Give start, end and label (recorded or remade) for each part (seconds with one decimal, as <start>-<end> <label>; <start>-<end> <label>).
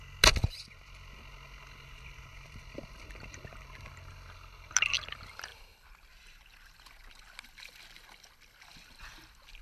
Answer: 0.0-2.3 recorded; 2.3-3.2 remade; 3.2-9.6 recorded